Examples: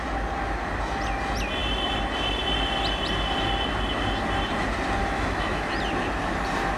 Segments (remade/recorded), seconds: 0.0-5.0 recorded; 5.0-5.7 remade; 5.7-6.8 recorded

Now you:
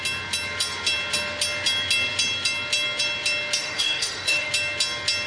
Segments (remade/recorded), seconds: 0.0-3.6 recorded; 3.6-4.5 remade; 4.5-5.3 recorded